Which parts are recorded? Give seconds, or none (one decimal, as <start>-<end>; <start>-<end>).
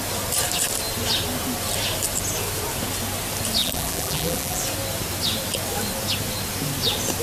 0.0-3.6; 4.6-7.2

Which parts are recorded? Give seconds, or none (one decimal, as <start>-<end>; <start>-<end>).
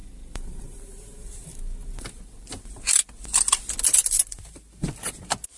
1.6-5.6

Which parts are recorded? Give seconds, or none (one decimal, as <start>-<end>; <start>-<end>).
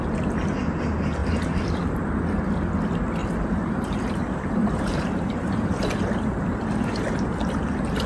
0.0-1.2; 2.0-3.2; 5.9-8.1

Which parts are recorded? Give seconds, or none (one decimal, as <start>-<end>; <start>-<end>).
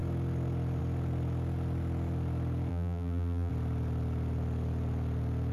0.0-2.7; 3.5-5.5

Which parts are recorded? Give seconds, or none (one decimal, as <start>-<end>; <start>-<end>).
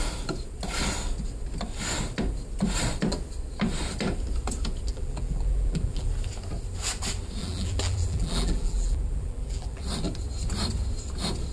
0.0-4.9; 6.1-7.4; 9.8-11.5